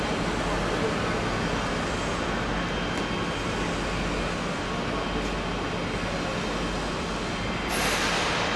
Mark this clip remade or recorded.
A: recorded